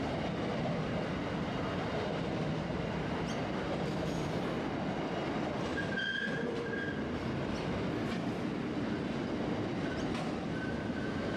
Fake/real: real